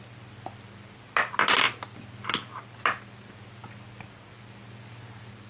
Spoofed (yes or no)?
no